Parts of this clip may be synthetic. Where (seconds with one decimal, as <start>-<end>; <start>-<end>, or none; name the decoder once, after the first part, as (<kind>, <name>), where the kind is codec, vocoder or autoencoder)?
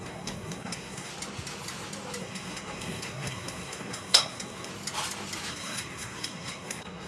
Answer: 0.0-1.1 (codec, SNAC); 2.2-4.7; 5.5-7.1